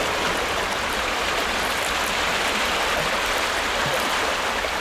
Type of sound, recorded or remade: recorded